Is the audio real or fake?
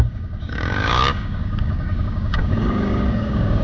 fake